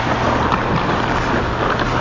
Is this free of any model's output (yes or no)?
yes